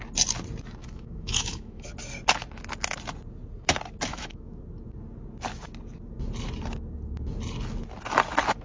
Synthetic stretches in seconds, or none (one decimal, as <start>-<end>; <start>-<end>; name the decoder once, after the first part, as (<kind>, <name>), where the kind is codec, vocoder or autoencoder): 0.8-1.9 (autoencoder, DAC-VAE); 4.1-4.6